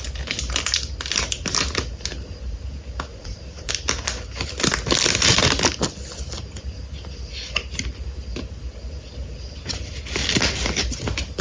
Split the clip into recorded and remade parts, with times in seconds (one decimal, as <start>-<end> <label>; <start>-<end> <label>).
0.0-3.1 recorded; 3.1-3.7 remade; 3.7-11.4 recorded